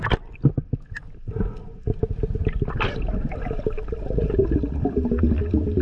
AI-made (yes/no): no